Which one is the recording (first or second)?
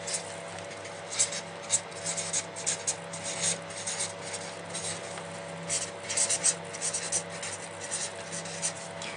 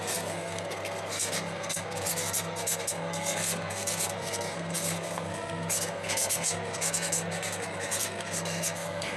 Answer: first